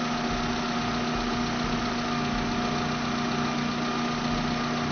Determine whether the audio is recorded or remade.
recorded